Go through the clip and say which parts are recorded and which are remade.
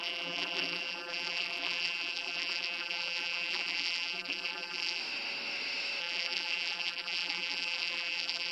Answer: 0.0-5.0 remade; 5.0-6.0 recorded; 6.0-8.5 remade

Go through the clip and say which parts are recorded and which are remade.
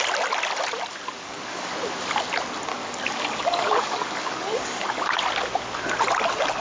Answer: 0.0-0.9 recorded; 0.9-1.7 remade; 1.7-2.7 recorded; 2.7-5.1 remade; 5.1-6.6 recorded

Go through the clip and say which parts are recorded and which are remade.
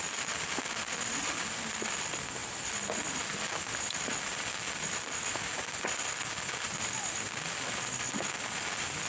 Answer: 0.0-9.1 recorded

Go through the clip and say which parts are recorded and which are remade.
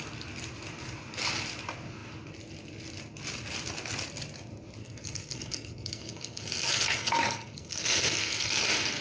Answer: 0.0-4.8 recorded; 4.8-9.0 remade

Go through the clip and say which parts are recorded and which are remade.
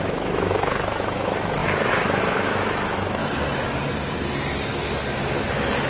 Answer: 0.0-3.2 remade; 3.2-5.9 recorded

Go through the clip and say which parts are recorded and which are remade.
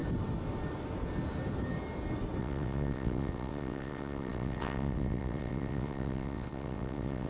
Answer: 0.0-2.4 recorded; 2.4-7.3 remade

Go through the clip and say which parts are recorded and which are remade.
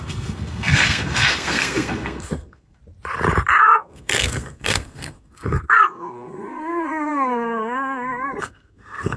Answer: 0.0-2.8 remade; 2.8-3.6 recorded; 3.6-9.2 remade